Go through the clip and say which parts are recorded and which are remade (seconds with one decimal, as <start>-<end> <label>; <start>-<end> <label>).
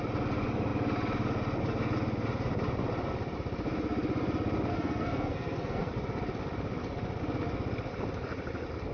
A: 0.0-4.7 recorded; 4.7-5.9 remade; 5.9-8.9 recorded